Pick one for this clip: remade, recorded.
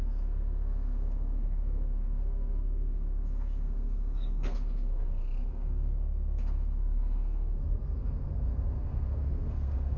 remade